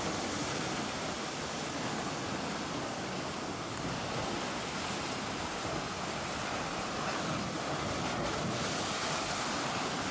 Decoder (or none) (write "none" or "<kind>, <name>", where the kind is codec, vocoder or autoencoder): none